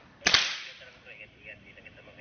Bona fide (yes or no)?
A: yes